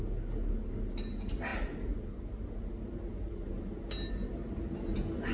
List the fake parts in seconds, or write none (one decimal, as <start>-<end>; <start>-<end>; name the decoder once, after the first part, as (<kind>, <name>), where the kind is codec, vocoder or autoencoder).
none